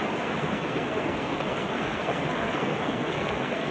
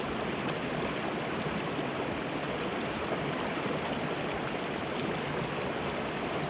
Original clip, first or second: second